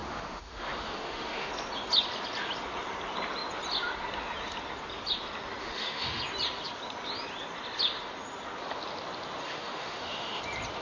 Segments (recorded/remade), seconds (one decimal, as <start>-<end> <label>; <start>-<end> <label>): 0.0-1.5 remade; 1.5-5.6 recorded; 5.6-6.2 remade; 6.2-9.4 recorded; 9.4-10.4 remade; 10.4-10.8 recorded